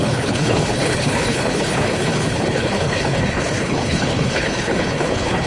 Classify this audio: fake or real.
fake